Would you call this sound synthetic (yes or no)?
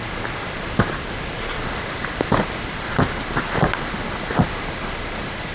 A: no